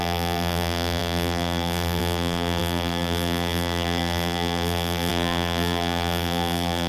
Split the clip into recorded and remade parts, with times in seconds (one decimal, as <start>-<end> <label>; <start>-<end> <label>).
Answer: 0.0-6.9 remade